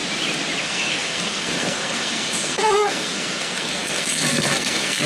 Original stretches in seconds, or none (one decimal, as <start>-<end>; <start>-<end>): 0.0-0.6